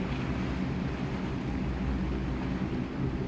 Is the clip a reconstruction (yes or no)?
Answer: no